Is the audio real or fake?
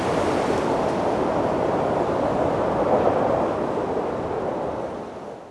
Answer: real